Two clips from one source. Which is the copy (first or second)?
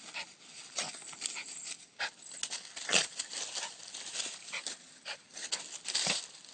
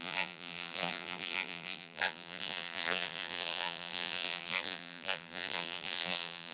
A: second